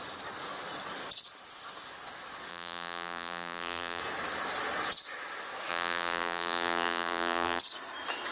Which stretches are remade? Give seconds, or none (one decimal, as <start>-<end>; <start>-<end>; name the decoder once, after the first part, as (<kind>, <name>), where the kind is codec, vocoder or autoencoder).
2.5-4.0 (vocoder, BigVGAN v2); 5.7-7.6